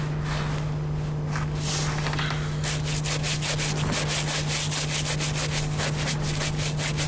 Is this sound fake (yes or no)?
no